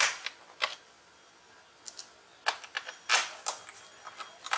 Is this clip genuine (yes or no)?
yes